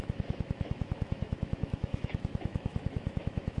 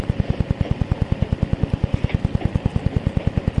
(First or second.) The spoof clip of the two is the first